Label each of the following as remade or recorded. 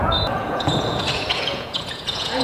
remade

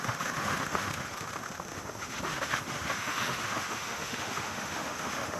remade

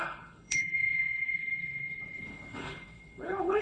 remade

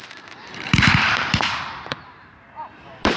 remade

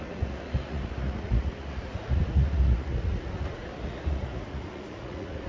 remade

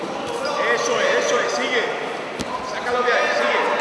recorded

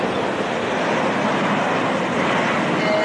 recorded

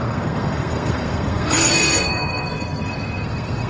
remade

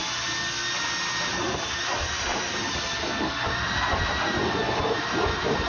recorded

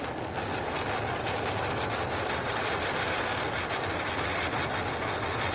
recorded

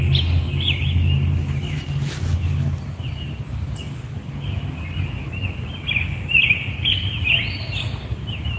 recorded